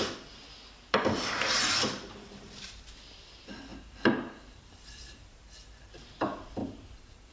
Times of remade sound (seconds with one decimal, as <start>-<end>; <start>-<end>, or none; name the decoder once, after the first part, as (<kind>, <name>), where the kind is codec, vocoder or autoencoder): 0.0-3.7 (vocoder, BigVGAN v2); 5.5-6.6